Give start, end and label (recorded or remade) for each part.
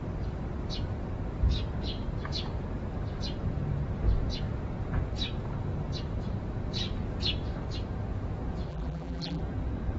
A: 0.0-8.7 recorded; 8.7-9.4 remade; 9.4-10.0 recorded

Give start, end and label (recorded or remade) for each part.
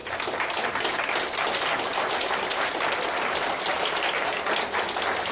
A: 0.0-5.3 recorded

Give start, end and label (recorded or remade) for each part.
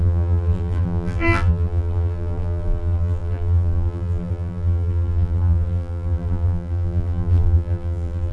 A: 0.0-8.3 remade